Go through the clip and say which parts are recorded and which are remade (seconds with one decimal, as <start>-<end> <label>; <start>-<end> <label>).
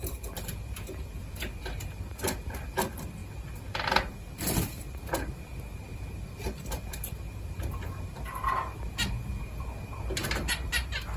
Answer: 0.0-11.2 recorded